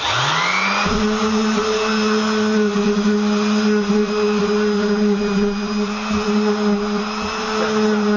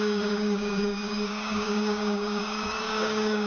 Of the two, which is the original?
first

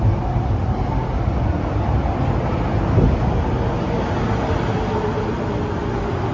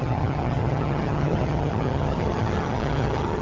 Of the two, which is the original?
first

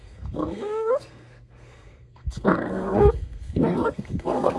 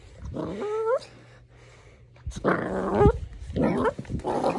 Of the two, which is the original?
second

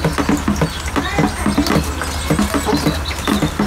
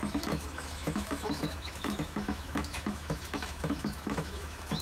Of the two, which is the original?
first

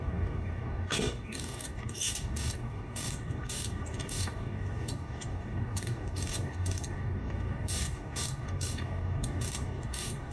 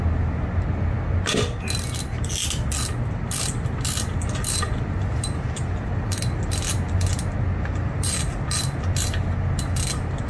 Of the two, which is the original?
second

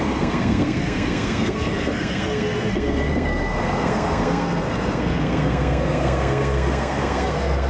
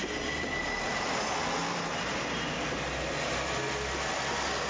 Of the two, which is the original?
second